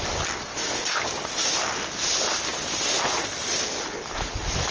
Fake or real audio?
real